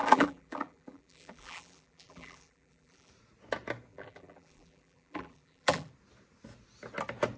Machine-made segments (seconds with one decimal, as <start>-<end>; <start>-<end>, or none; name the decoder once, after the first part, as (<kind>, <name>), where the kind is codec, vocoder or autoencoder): 0.0-3.1 (vocoder, BigVGAN v2); 3.9-5.9